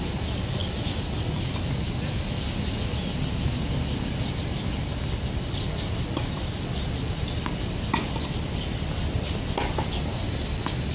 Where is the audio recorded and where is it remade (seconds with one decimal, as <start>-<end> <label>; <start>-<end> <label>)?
0.0-10.9 recorded